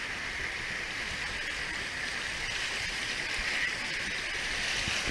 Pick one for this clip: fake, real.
real